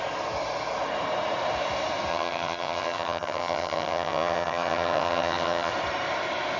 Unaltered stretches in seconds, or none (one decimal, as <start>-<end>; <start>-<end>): 0.0-2.1; 5.7-6.6

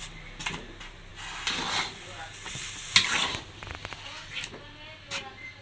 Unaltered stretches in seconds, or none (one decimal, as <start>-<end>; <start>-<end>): 0.0-5.6

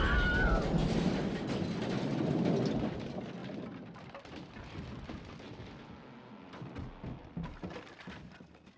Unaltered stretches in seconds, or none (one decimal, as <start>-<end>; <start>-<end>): 0.0-8.8